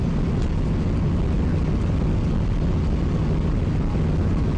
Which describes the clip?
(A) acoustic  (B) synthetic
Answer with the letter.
A